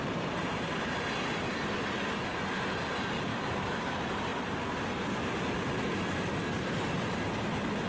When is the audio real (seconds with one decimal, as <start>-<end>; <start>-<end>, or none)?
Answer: 0.0-3.3; 3.8-7.9